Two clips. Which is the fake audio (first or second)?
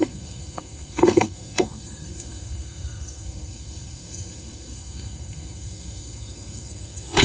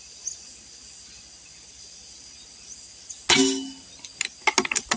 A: first